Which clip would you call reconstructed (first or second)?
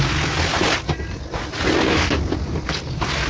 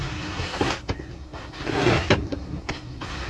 second